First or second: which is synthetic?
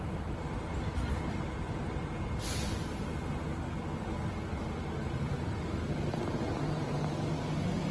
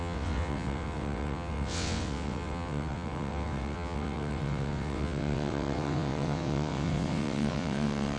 second